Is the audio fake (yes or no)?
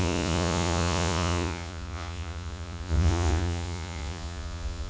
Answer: yes